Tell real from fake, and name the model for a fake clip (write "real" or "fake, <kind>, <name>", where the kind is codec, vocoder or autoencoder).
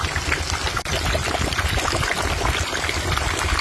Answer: fake, vocoder, BigVGAN v2